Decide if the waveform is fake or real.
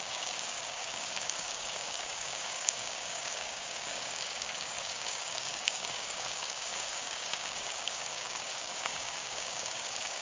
fake